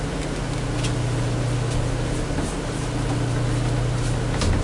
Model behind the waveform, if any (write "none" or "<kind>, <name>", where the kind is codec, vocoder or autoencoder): none